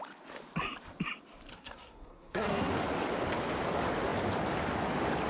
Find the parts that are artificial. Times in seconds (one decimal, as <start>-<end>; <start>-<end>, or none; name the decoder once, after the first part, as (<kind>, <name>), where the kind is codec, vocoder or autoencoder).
1.5-2.7 (codec, SNAC)